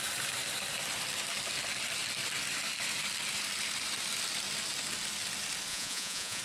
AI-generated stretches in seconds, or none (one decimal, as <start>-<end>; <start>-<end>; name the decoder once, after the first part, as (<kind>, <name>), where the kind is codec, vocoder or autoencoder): 5.7-6.4 (vocoder, Vocos)